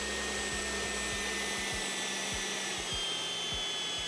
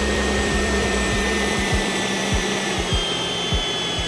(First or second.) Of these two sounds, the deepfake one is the second